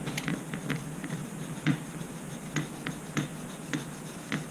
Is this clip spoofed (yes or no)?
no